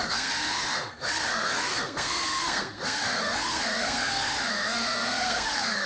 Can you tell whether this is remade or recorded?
remade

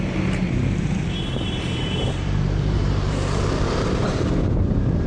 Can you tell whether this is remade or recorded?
remade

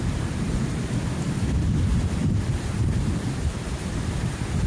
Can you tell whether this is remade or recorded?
recorded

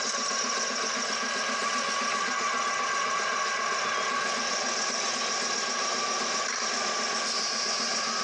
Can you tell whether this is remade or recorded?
recorded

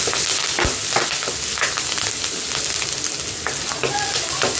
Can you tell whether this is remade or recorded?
recorded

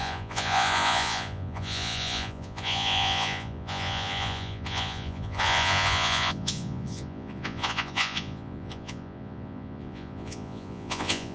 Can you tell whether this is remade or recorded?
remade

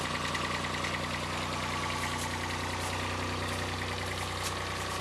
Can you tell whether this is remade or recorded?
recorded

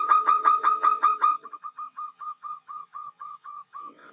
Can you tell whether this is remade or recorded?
remade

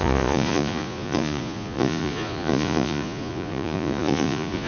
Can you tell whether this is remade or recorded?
remade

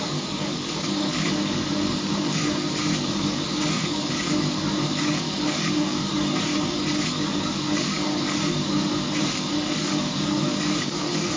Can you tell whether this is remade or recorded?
remade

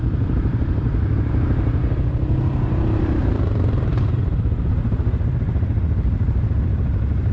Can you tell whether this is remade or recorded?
remade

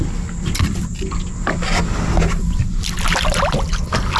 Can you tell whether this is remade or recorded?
recorded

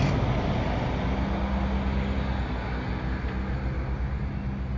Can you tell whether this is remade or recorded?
recorded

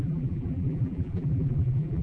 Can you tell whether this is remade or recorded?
remade